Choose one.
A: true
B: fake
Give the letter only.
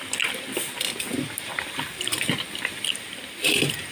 A